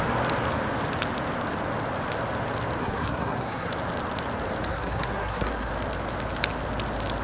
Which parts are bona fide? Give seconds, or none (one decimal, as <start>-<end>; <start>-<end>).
0.0-2.8; 3.7-4.7; 5.7-7.2